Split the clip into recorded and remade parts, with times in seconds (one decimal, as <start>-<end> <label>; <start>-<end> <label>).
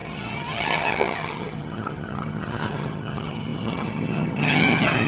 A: 0.0-5.1 remade